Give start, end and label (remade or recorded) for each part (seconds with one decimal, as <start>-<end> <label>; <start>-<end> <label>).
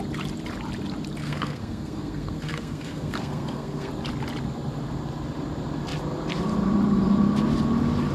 0.0-1.2 recorded; 1.2-3.9 remade; 3.9-8.1 recorded